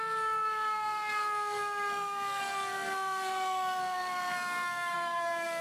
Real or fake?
fake